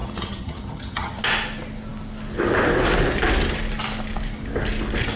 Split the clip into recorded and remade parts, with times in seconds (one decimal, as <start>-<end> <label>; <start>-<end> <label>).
0.0-1.2 remade; 1.2-5.2 recorded